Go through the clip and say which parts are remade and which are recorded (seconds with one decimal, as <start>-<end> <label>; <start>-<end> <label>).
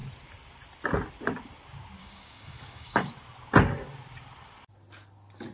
0.0-2.0 recorded; 2.0-3.1 remade; 3.1-5.5 recorded